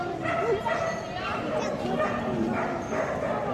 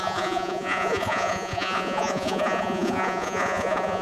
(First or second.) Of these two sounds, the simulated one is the second